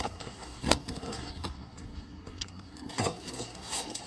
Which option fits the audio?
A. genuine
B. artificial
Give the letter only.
B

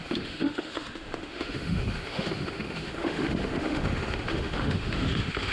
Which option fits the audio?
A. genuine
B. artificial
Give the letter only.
B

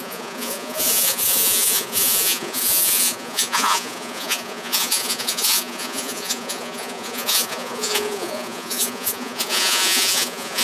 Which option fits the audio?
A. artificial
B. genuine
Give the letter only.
A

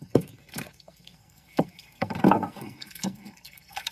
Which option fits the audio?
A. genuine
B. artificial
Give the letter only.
B